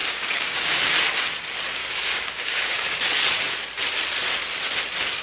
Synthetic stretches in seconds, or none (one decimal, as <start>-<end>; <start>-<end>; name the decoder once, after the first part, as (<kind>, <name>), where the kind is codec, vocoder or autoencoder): 0.0-0.8 (codec, DAC); 1.8-3.0